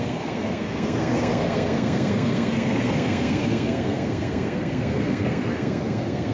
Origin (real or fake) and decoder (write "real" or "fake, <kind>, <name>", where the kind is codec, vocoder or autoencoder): fake, codec, SNAC